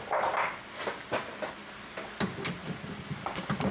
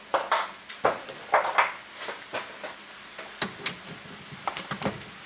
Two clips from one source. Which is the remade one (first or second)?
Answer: first